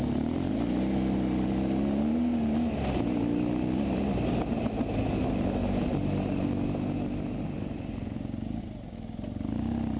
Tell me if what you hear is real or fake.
real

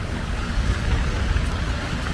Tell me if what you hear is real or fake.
fake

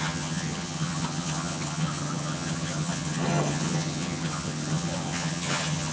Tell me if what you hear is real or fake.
fake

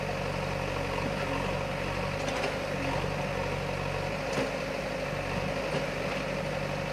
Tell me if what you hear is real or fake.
real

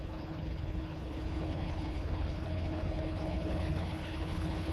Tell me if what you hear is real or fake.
fake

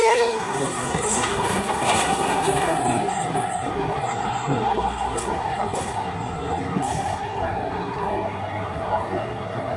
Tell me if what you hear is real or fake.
fake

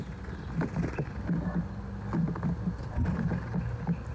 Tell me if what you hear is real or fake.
real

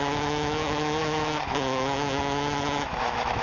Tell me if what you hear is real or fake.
fake